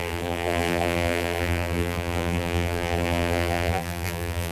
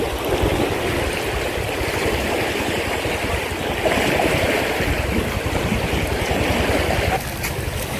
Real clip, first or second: second